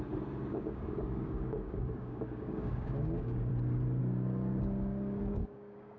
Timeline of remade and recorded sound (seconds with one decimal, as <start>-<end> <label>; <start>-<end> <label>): 0.0-0.5 recorded; 0.5-3.5 remade; 3.5-4.0 recorded; 4.0-6.0 remade